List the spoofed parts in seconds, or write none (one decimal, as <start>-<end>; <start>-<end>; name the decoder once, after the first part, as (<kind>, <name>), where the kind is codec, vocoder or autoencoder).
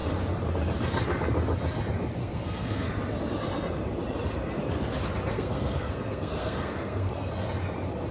2.2-2.9 (codec, SNAC); 5.3-7.1